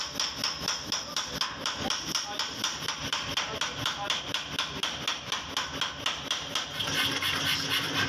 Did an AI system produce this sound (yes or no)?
no